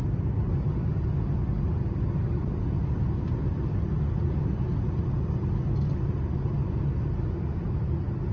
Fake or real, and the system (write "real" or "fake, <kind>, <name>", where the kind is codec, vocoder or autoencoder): real